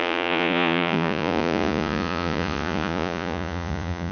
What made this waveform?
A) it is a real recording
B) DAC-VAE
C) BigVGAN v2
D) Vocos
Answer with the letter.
D